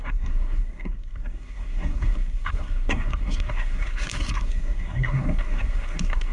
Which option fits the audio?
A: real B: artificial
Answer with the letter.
B